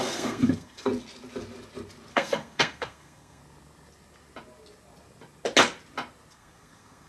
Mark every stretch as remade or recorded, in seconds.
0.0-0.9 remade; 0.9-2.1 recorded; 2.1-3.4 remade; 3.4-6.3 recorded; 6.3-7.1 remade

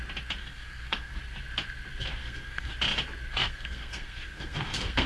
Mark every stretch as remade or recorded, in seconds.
0.0-0.4 recorded; 0.4-1.2 remade; 1.2-2.2 recorded; 2.2-2.7 remade; 2.7-3.3 recorded; 3.3-5.1 remade

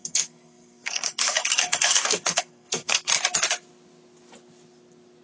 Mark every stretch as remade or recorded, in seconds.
0.0-3.1 remade; 3.1-5.2 recorded

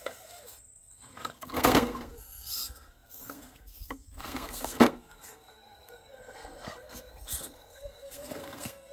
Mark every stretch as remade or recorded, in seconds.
0.0-8.9 remade

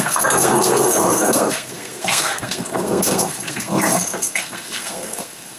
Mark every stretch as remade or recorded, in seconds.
0.0-5.6 remade

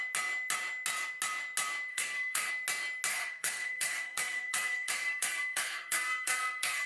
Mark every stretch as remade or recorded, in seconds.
0.0-1.9 recorded; 1.9-2.5 remade; 2.5-3.1 recorded; 3.1-6.9 remade

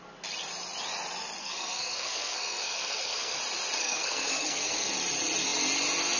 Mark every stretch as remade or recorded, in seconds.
0.0-1.4 recorded; 1.4-3.4 remade; 3.4-3.8 recorded; 3.8-4.9 remade; 4.9-6.2 recorded